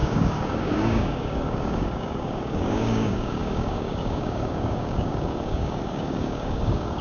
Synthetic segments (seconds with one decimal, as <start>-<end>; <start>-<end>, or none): 0.0-7.0